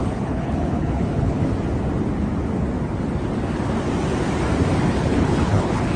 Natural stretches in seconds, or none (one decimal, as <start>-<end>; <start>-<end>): 1.4-5.0